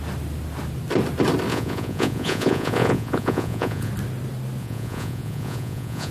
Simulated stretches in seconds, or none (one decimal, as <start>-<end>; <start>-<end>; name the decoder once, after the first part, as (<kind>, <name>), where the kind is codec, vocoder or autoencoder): 1.5-3.9 (vocoder, Vocos); 4.6-6.1